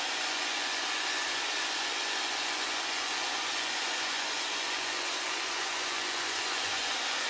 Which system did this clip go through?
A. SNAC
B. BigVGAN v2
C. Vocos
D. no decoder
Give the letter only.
C